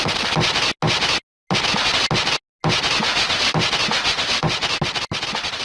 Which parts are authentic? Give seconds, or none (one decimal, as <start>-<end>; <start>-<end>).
0.0-5.6